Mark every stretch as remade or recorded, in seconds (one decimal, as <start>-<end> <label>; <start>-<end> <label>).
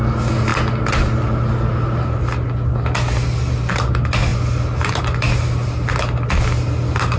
0.0-7.2 recorded